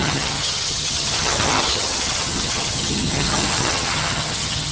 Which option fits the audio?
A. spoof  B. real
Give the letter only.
A